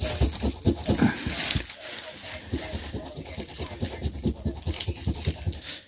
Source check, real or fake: real